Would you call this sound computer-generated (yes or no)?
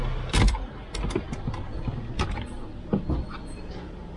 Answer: no